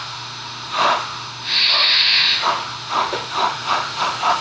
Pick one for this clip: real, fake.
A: fake